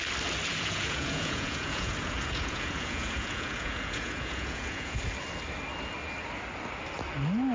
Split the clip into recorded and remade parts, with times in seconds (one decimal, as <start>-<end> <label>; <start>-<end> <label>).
0.0-0.5 recorded; 0.5-5.0 remade; 5.0-7.5 recorded